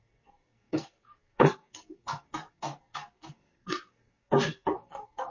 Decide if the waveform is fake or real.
fake